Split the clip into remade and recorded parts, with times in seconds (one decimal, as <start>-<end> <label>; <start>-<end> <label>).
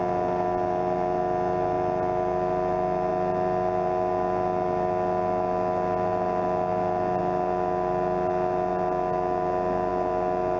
0.0-10.6 recorded